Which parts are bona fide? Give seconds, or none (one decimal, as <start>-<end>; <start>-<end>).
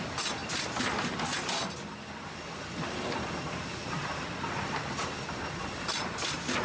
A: 0.0-6.6